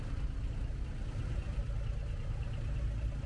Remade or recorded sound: recorded